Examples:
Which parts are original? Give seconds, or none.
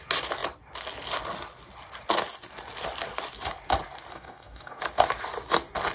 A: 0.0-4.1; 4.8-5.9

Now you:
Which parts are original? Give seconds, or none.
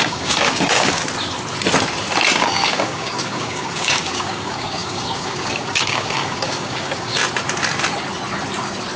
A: 1.0-2.4; 7.2-9.0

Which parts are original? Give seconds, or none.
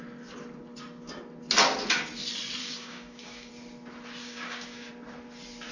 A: 0.0-2.6; 3.5-4.2; 4.9-5.7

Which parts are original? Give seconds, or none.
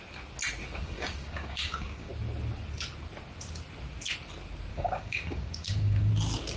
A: 0.0-0.6; 2.1-4.7; 6.1-6.6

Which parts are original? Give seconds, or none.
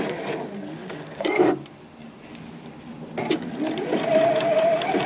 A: 0.0-0.8; 1.5-5.1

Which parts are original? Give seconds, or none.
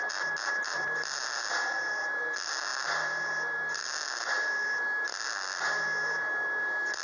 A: 0.0-7.0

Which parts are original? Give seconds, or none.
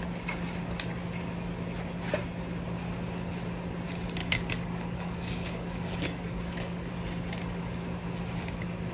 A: 0.0-4.2; 6.9-8.9